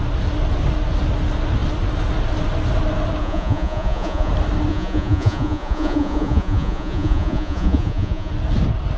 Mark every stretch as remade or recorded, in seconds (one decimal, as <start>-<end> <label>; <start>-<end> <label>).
0.0-3.2 recorded; 3.2-4.3 remade; 4.3-4.7 recorded; 4.7-8.3 remade; 8.3-9.0 recorded